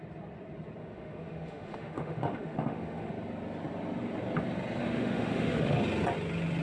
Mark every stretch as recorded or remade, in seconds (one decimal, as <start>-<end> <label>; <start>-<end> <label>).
0.0-0.8 recorded; 0.8-3.1 remade; 3.1-4.8 recorded; 4.8-5.8 remade; 5.8-6.6 recorded